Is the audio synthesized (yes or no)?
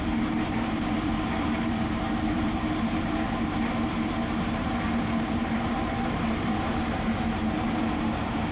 yes